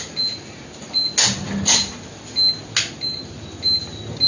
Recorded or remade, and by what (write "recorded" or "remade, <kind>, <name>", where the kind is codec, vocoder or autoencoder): recorded